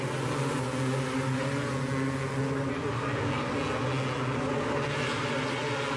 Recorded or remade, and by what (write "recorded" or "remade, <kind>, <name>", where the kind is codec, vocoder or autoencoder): recorded